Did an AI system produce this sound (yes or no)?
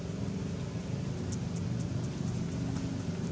no